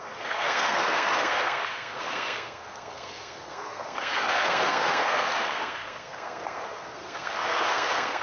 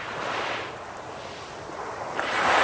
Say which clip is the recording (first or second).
second